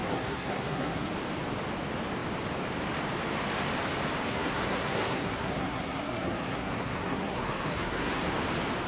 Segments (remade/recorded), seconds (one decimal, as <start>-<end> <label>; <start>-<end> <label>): 0.0-1.1 remade; 1.1-4.3 recorded; 4.3-8.2 remade; 8.2-8.9 recorded